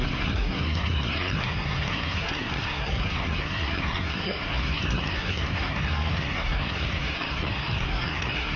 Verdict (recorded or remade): remade